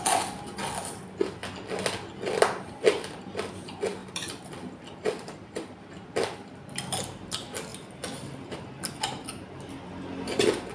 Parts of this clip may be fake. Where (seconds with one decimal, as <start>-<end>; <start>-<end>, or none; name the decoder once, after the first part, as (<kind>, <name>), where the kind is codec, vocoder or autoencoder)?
4.0-5.7 (vocoder, BigVGAN v2); 7.7-8.5